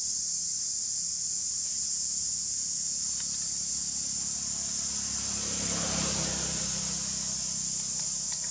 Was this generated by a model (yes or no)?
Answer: no